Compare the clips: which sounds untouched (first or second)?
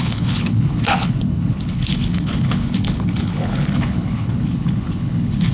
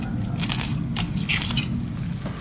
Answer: second